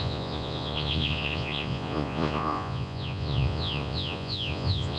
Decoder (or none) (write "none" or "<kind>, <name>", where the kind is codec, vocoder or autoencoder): vocoder, Vocos